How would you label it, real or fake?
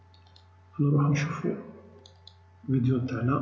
real